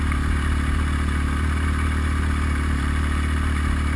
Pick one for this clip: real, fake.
real